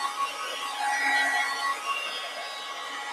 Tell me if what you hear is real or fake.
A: real